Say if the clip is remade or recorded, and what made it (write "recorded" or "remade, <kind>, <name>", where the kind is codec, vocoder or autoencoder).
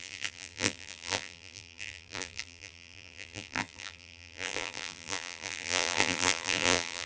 remade, vocoder, BigVGAN v2